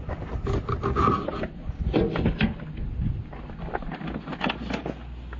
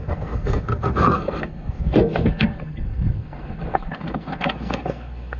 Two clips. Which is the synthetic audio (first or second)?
second